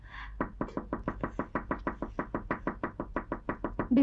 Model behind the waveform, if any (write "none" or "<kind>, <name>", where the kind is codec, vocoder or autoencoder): none